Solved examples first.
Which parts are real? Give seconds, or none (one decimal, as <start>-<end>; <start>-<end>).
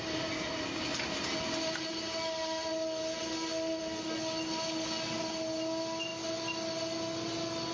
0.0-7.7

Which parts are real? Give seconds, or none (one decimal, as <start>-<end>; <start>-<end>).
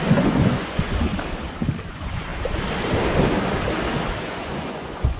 1.1-1.8; 2.3-4.2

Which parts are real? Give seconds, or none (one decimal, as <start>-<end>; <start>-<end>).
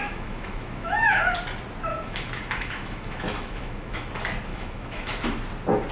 1.2-1.9; 4.1-4.5; 5.4-5.9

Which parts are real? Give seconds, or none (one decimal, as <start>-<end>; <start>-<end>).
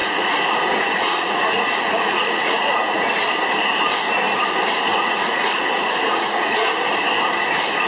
3.1-4.9; 6.7-7.9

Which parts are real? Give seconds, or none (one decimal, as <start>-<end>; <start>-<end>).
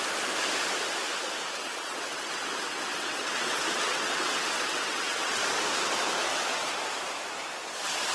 0.0-1.6; 5.3-6.3; 6.8-8.1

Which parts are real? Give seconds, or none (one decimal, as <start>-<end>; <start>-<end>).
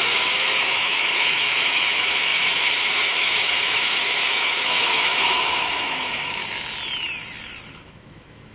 6.4-7.7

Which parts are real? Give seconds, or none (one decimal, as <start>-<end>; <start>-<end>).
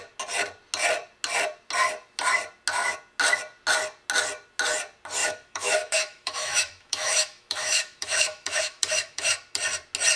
0.0-5.2; 9.3-10.2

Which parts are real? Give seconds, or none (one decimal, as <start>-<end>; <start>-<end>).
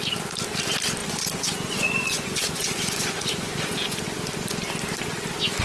0.0-1.0; 4.0-5.6